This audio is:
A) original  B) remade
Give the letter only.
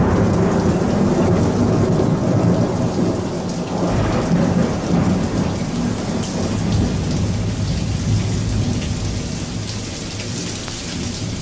A